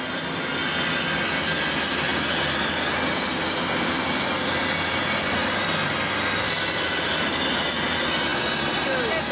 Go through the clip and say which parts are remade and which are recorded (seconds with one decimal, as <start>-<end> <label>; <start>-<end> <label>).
0.0-9.3 recorded